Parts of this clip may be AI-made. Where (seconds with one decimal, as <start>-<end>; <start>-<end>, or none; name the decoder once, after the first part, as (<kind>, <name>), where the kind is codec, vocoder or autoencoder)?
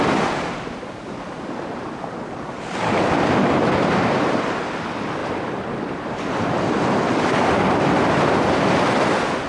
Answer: none